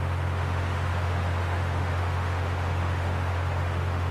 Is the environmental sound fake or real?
fake